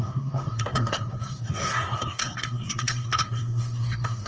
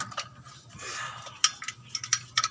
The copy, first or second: first